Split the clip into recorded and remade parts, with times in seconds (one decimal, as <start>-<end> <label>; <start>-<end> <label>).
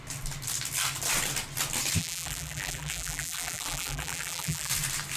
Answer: 0.0-2.0 recorded; 2.0-4.7 remade; 4.7-5.2 recorded